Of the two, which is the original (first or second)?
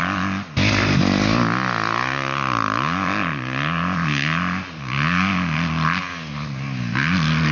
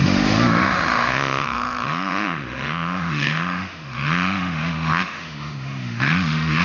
first